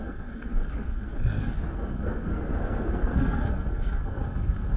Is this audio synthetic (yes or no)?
yes